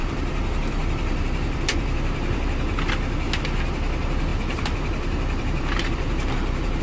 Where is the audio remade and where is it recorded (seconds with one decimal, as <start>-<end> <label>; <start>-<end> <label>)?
0.0-2.9 remade; 2.9-4.3 recorded; 4.3-6.8 remade